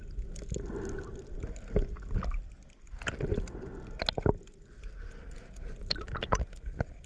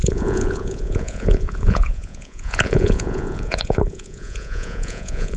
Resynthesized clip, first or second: second